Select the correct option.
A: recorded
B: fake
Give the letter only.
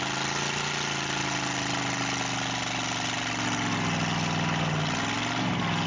A